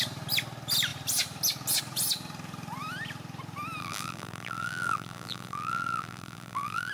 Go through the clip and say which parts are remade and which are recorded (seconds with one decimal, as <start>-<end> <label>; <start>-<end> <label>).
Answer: 0.0-3.8 recorded; 3.8-6.9 remade